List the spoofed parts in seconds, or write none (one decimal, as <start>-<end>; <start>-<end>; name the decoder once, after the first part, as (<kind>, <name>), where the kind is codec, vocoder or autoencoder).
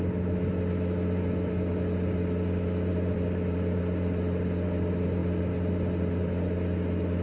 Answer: 2.9-3.8 (vocoder, BigVGAN v2)